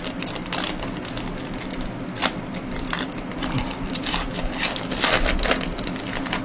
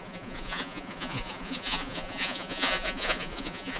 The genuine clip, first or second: first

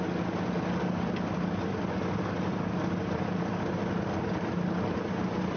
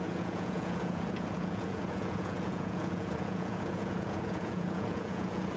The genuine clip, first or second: first